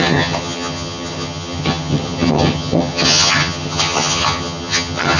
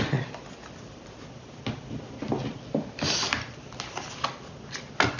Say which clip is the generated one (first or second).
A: first